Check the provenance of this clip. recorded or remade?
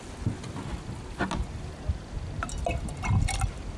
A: recorded